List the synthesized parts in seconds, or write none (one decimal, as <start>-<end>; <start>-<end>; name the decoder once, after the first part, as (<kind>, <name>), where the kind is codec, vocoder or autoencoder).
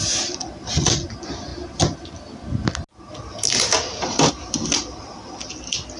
none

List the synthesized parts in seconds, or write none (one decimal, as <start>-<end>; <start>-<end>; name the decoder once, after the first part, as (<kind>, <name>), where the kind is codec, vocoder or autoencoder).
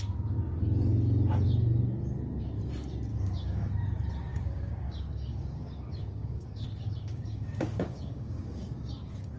3.1-3.7 (codec, DAC); 4.3-9.4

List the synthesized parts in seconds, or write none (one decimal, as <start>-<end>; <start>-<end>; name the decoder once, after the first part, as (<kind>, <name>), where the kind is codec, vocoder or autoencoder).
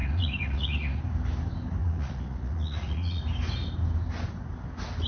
0.0-1.0 (vocoder, Vocos); 1.8-3.2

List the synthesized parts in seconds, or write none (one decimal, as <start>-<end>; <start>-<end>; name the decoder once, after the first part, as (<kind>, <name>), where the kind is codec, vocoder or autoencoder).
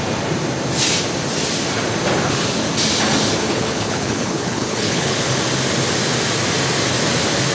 3.4-5.3 (codec, HILCodec)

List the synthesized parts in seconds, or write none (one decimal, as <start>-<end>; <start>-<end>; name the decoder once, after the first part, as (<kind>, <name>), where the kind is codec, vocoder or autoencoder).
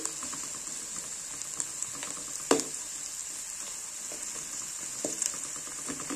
none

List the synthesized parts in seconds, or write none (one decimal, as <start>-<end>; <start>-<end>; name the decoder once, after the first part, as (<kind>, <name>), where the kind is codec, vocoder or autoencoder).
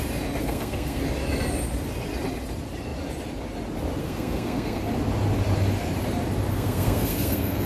0.4-1.0 (codec, SNAC); 4.0-4.8; 6.5-7.7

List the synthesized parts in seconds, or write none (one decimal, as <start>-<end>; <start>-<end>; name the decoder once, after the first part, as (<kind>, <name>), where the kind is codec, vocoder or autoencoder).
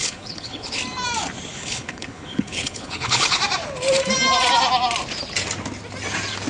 0.0-0.8 (codec, HILCodec); 1.5-3.4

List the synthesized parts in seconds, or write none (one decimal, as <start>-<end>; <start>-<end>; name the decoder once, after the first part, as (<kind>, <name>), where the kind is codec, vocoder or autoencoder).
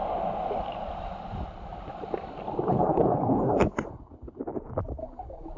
2.7-4.4 (codec, HILCodec); 5.0-5.6